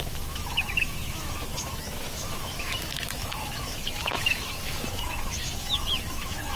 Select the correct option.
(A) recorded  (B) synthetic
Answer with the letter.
B